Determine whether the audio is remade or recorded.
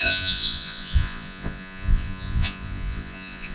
remade